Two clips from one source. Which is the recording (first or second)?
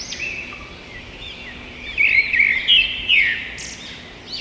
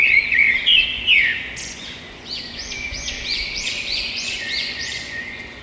first